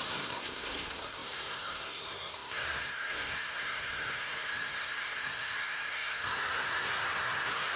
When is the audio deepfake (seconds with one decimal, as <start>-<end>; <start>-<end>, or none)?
0.0-7.8